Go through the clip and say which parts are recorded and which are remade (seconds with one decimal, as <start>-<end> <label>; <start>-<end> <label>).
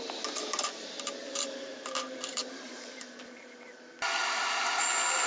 0.0-1.2 recorded; 1.2-3.7 remade; 3.7-4.2 recorded; 4.2-4.8 remade; 4.8-5.3 recorded